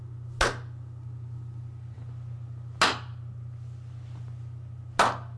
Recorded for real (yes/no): yes